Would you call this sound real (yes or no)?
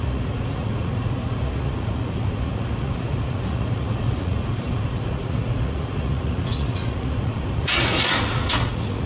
no